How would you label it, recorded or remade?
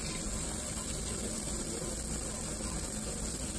recorded